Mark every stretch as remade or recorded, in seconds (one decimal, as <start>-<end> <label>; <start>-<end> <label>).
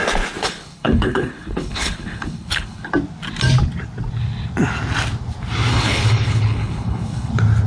0.0-0.4 recorded; 0.4-2.9 remade; 2.9-5.7 recorded; 5.7-7.3 remade; 7.3-7.7 recorded